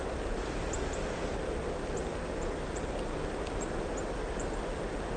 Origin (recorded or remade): recorded